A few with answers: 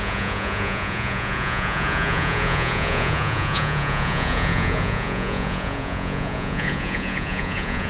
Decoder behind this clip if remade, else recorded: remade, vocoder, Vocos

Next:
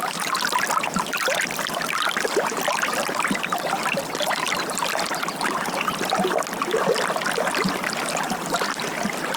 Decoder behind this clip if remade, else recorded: recorded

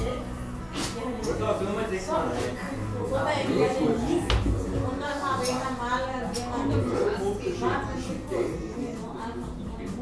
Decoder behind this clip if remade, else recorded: recorded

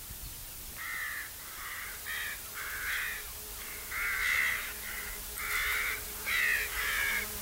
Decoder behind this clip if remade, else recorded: recorded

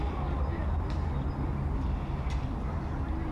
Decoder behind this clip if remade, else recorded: recorded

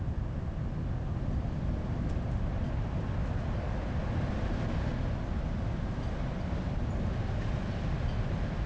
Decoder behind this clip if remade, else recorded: recorded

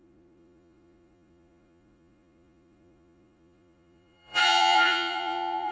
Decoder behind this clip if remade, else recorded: remade, vocoder, Vocos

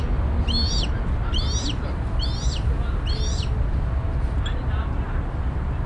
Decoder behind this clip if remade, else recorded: recorded